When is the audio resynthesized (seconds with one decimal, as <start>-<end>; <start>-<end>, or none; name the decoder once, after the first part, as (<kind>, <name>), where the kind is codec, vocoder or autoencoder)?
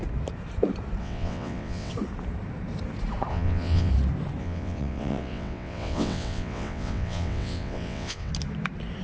1.0-1.9 (vocoder, WaveNeXt); 3.3-3.9; 4.4-8.3